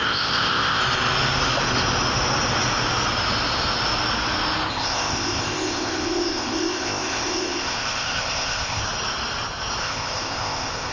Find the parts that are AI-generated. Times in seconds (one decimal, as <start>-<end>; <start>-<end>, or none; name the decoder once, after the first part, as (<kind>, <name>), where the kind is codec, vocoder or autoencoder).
0.0-0.8 (codec, ZipCodec); 4.7-8.8; 9.8-10.9